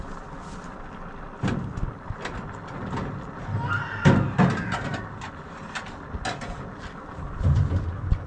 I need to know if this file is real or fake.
real